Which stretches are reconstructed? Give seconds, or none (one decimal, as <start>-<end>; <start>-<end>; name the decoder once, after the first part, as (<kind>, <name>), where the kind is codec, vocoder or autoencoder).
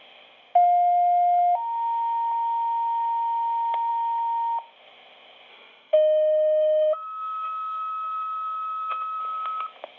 5.5-9.2 (autoencoder, DAC-VAE)